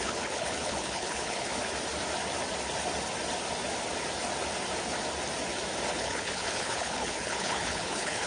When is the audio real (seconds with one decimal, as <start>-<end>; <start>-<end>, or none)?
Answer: 1.5-5.9